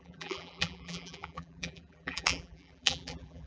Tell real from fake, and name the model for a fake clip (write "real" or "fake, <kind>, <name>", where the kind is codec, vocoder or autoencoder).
fake, vocoder, BigVGAN v2